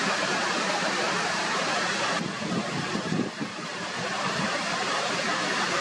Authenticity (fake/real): fake